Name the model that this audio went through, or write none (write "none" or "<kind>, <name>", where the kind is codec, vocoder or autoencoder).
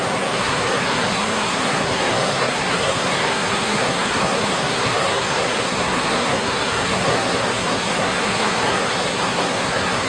codec, SNAC